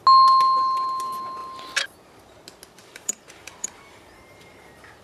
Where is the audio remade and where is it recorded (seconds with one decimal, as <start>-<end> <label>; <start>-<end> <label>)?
0.0-2.8 recorded; 2.8-4.5 remade; 4.5-5.0 recorded